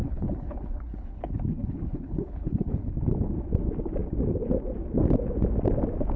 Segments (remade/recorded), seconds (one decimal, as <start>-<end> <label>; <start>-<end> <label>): 0.0-2.9 remade; 2.9-6.2 recorded